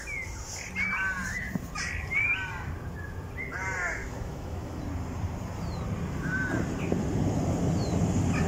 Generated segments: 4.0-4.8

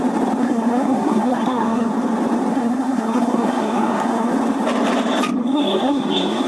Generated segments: 0.4-1.9; 2.5-4.3; 5.4-6.5

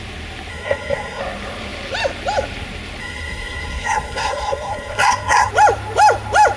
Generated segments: 0.5-1.2; 3.0-5.5

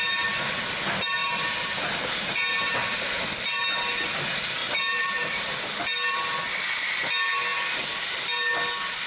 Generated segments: 1.2-2.3; 4.6-6.4